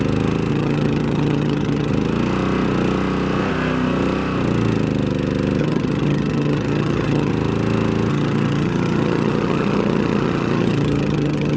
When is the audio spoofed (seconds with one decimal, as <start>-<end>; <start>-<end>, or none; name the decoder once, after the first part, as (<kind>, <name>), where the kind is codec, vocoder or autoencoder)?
0.5-1.9 (vocoder, HiFi-GAN); 5.6-7.3; 8.1-11.6